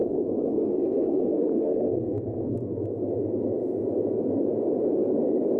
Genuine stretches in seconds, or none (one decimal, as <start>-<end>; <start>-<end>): 2.8-5.6